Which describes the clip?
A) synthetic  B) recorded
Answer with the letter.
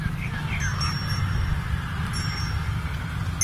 B